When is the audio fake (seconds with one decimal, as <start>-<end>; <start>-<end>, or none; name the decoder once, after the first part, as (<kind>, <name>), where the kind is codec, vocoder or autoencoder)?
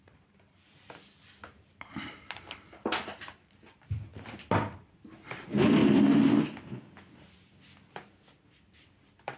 0.0-4.1 (vocoder, BigVGAN v2); 4.7-5.8; 8.6-9.4